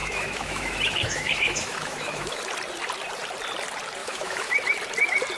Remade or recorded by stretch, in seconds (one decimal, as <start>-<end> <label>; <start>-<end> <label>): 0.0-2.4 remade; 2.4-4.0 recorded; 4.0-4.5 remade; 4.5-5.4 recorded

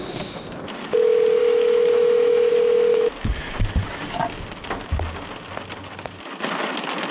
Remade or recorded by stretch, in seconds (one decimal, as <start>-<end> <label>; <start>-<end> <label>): 0.0-1.4 recorded; 1.4-2.5 remade; 2.5-7.1 recorded

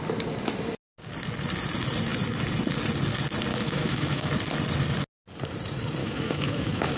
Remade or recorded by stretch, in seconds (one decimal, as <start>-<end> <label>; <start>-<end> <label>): 0.0-3.5 recorded; 3.5-4.3 remade; 4.3-6.0 recorded; 6.0-7.0 remade

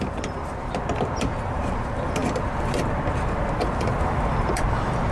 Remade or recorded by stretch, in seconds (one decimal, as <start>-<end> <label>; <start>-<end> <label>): 0.0-5.1 recorded